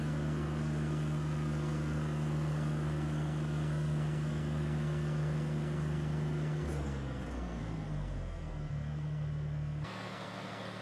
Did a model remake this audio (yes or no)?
yes